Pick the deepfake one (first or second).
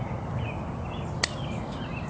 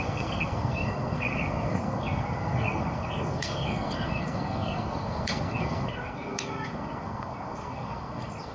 second